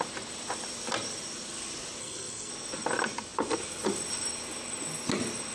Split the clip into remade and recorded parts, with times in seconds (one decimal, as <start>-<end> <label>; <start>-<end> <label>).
0.0-2.0 recorded; 2.0-2.5 remade; 2.5-5.5 recorded